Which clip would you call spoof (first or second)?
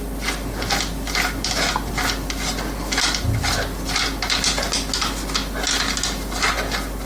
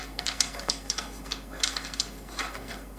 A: second